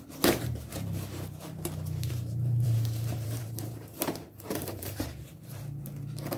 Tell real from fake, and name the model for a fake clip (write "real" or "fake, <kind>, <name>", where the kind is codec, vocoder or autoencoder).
fake, vocoder, BigVGAN v2